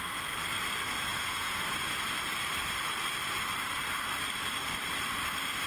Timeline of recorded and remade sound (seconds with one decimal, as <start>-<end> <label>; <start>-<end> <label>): 0.0-1.1 recorded; 1.1-1.6 remade; 1.6-5.7 recorded